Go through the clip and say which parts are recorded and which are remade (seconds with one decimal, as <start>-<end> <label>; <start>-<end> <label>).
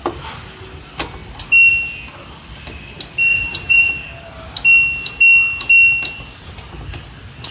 0.0-3.3 recorded; 3.3-3.9 remade; 3.9-7.5 recorded